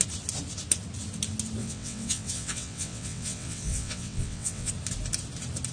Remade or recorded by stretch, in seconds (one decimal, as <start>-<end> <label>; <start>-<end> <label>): 0.0-1.6 recorded; 1.6-4.7 remade; 4.7-5.7 recorded